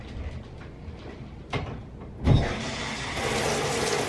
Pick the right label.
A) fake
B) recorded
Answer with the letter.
B